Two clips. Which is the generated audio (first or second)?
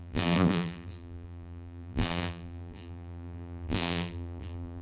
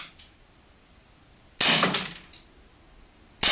first